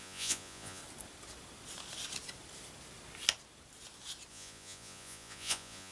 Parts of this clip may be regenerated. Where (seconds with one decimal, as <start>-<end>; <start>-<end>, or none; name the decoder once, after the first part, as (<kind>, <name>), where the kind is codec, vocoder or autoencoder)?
0.0-0.8 (vocoder, Vocos); 4.3-5.9